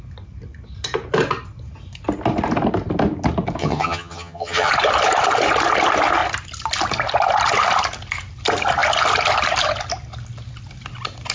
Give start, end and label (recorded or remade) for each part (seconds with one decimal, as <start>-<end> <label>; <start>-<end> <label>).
0.0-3.6 recorded; 3.6-4.7 remade; 4.7-11.3 recorded